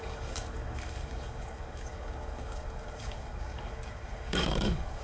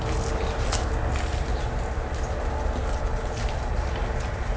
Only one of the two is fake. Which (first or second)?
first